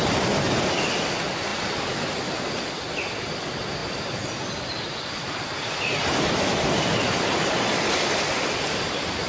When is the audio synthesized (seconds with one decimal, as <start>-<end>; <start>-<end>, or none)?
1.5-2.1; 3.8-8.6